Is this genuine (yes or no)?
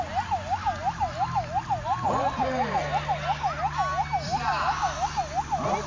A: yes